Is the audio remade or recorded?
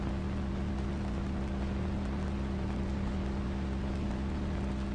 recorded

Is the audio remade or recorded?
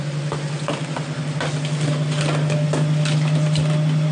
recorded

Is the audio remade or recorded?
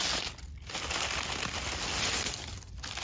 recorded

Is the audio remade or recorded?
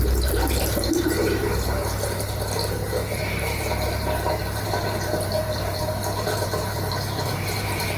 remade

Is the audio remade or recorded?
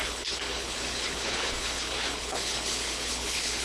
remade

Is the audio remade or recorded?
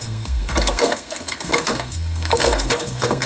remade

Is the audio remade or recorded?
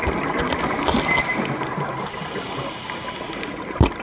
recorded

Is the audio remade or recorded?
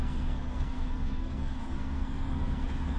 remade